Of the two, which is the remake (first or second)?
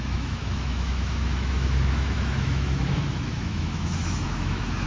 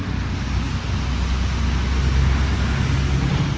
first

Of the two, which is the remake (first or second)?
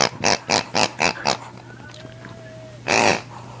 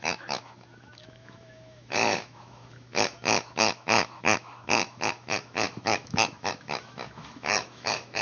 second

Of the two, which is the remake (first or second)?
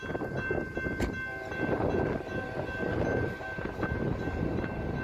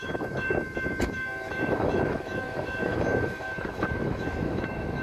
second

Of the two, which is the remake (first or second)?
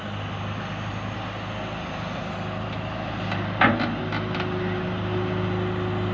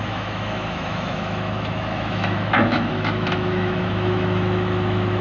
second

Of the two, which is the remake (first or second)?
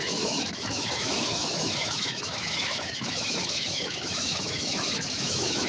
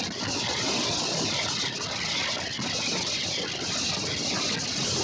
first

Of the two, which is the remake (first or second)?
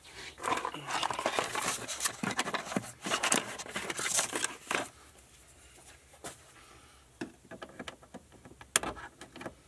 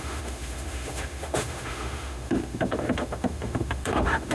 second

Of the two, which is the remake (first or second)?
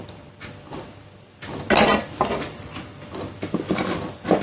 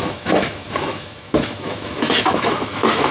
second